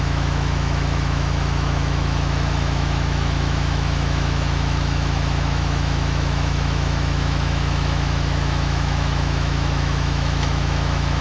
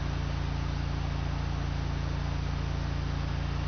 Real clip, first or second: second